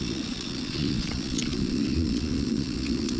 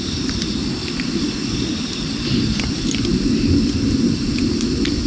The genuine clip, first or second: second